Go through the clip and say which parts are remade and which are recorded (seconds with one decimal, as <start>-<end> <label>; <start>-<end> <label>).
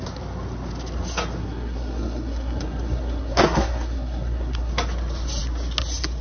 0.0-1.4 recorded; 1.4-4.7 remade; 4.7-6.2 recorded